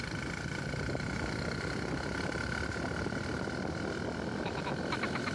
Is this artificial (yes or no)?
no